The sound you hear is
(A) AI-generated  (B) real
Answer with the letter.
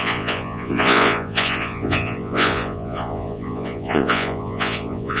A